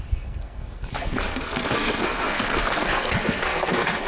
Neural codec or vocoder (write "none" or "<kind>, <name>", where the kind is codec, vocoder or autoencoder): codec, SNAC